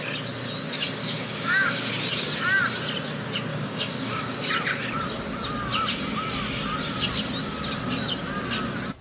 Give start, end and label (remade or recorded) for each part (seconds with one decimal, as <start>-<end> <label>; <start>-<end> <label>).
0.0-1.0 recorded; 1.0-1.9 remade; 1.9-3.5 recorded; 3.5-4.5 remade; 4.5-9.0 recorded